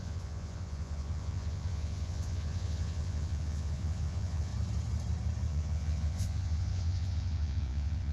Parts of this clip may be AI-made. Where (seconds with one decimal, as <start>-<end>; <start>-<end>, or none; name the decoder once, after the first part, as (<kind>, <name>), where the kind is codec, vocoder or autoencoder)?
0.0-4.5 (vocoder, Vocos); 5.5-8.1